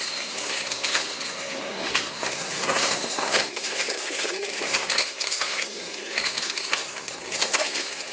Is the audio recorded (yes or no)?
no